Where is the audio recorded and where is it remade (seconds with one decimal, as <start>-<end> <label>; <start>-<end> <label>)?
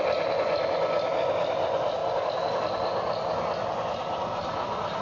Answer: 0.0-5.0 recorded